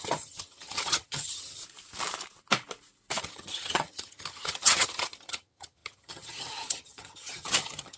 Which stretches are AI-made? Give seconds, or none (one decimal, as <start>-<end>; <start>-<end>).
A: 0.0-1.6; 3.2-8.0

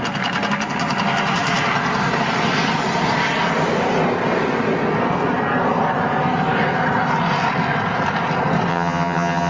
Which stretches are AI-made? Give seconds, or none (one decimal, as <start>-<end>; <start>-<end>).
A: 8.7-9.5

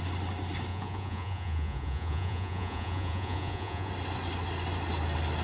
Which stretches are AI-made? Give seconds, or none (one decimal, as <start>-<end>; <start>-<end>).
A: 0.7-3.9

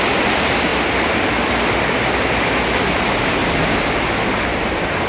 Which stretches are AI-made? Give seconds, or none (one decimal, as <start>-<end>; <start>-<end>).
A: none